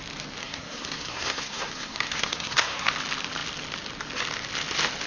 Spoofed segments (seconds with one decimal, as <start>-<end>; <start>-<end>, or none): 0.4-2.9